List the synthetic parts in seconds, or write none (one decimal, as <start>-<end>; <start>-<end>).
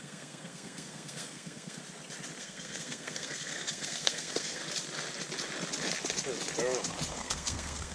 0.0-1.8; 2.4-4.6; 7.1-7.9